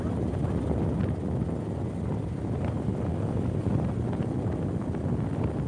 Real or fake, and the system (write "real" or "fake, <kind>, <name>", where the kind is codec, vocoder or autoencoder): real